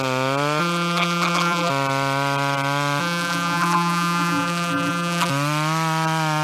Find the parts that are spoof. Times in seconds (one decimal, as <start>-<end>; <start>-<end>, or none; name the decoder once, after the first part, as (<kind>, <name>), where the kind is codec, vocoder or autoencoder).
0.6-1.7 (vocoder, BigVGAN v2); 3.0-5.3